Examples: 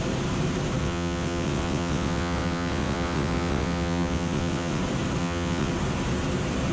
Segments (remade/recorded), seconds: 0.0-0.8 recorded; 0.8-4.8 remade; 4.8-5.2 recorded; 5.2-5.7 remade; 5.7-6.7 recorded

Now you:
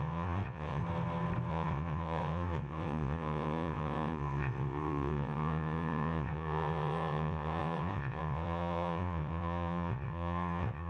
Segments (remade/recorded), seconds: 0.0-0.8 remade; 0.8-1.5 recorded; 1.5-10.9 remade